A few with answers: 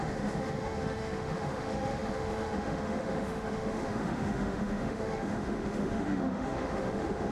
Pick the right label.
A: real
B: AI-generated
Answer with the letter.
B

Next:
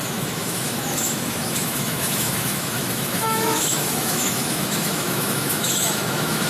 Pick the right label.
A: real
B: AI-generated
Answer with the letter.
B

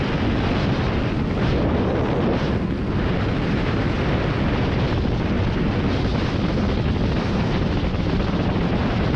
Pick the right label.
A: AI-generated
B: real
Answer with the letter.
B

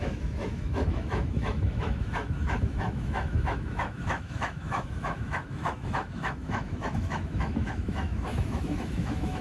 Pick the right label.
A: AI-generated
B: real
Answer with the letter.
A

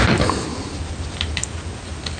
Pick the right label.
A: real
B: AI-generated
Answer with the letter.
A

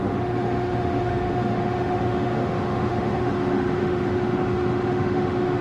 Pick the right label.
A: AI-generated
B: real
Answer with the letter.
A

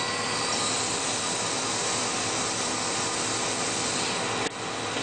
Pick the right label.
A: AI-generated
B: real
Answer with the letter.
B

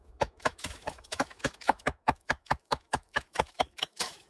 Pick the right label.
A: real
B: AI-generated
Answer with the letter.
B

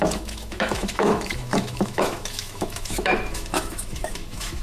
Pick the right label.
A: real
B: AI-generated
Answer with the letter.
B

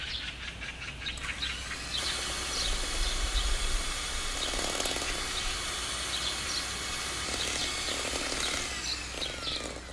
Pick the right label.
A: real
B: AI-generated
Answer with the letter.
A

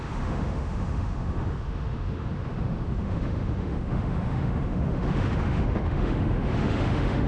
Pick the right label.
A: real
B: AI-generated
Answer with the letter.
B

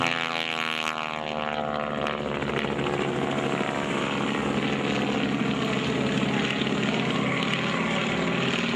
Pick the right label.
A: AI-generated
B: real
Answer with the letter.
B